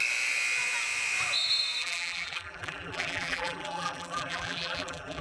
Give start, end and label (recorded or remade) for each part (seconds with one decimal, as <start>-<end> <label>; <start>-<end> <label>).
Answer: 0.0-1.8 recorded; 1.8-5.2 remade